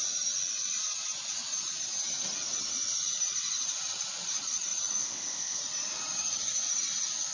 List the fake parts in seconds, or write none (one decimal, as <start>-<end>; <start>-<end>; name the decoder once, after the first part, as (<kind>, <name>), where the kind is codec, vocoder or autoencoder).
5.0-5.6 (codec, ZipCodec)